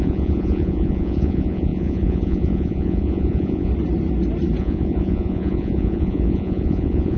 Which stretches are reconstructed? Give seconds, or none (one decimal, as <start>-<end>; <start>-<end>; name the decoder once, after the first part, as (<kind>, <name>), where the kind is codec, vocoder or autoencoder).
0.0-3.7 (vocoder, Vocos); 4.6-7.2